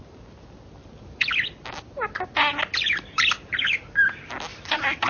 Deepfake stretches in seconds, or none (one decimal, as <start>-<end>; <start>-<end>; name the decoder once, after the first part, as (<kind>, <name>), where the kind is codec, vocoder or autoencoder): 4.5-5.1 (vocoder, BigVGAN v2)